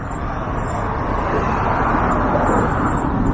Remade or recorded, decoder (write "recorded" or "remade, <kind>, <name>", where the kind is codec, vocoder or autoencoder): recorded